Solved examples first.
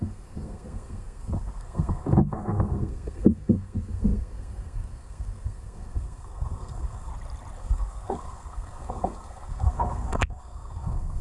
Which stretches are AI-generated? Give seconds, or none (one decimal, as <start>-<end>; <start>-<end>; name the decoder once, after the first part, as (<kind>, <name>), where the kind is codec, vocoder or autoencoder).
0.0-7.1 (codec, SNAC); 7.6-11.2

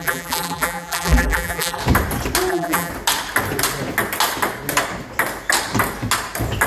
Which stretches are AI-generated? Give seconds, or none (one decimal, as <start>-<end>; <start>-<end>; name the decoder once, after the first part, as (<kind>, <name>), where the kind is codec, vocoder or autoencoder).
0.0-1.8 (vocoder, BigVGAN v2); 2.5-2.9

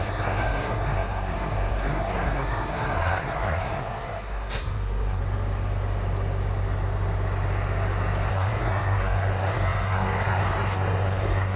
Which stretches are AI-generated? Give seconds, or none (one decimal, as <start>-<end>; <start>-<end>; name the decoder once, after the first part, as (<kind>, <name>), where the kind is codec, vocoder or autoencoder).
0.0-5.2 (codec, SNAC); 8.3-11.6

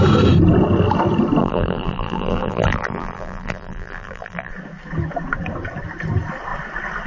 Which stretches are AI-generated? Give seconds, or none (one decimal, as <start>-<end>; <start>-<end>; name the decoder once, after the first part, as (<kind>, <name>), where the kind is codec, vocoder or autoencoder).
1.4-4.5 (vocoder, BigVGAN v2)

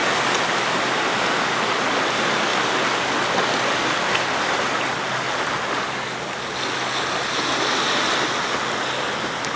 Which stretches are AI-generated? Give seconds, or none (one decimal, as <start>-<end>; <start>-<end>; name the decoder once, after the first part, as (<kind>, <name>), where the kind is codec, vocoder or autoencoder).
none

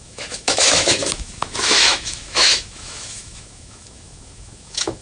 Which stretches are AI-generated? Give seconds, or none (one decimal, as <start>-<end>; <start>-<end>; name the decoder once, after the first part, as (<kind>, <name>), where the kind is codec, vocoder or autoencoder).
0.0-5.0 (autoencoder, DAC-VAE)